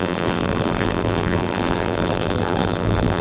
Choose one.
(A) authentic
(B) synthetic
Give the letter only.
B